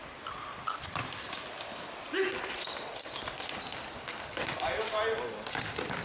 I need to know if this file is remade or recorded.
recorded